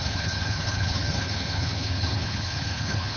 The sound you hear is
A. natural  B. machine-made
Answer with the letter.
B